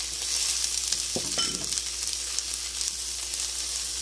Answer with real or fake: real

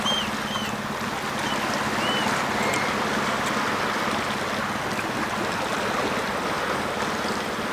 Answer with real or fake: real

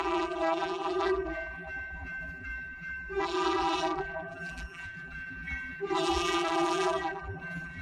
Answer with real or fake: fake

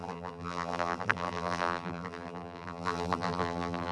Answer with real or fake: fake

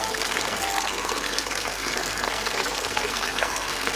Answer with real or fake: fake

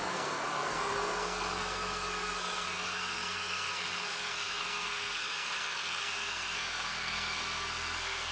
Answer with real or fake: fake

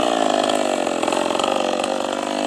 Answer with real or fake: real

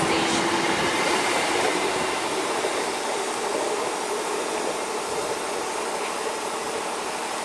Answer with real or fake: real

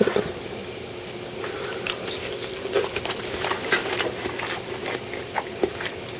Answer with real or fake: real